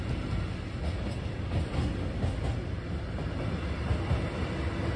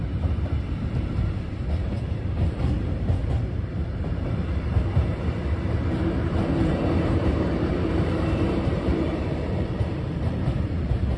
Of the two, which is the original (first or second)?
first